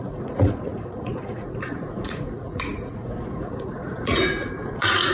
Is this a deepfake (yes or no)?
yes